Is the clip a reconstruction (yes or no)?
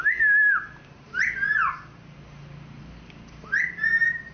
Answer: no